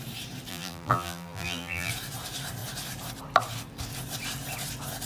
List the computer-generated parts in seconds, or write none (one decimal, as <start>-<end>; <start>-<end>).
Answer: 0.5-1.9